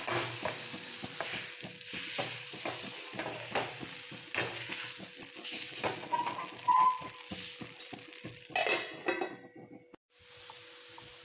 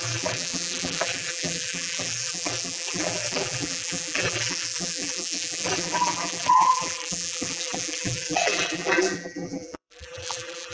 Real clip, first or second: first